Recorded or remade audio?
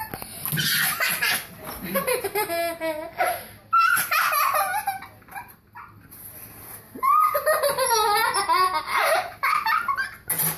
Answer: recorded